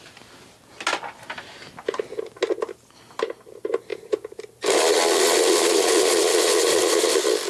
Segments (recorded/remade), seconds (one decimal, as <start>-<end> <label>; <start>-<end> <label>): 0.0-7.5 recorded